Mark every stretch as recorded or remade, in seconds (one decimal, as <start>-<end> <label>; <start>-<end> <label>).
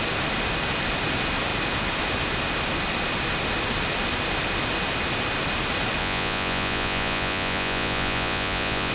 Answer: 0.0-6.0 recorded; 6.0-8.9 remade